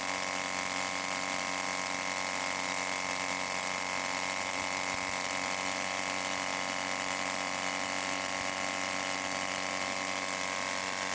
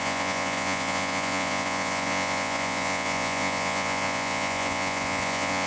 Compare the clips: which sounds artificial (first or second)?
second